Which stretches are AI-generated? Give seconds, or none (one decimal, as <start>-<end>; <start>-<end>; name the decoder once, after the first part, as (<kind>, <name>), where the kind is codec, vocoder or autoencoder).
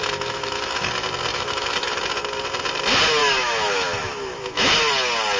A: 0.0-0.9 (autoencoder, DAC-VAE); 1.3-2.0; 3.2-4.9